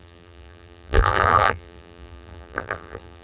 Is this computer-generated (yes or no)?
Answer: yes